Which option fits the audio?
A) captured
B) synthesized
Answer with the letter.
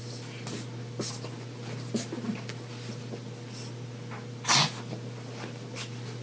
B